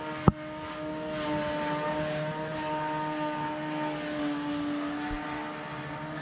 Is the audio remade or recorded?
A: recorded